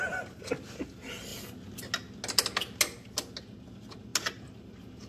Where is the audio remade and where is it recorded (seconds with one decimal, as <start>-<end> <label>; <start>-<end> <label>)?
0.0-5.1 recorded

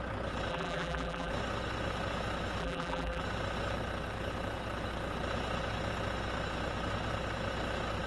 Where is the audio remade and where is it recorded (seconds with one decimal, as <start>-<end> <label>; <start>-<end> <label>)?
0.0-0.5 recorded; 0.5-1.3 remade; 1.3-2.6 recorded; 2.6-3.2 remade; 3.2-8.1 recorded

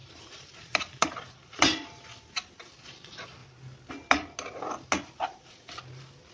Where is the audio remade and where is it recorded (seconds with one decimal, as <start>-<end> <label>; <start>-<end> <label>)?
0.0-2.0 remade; 2.0-6.3 recorded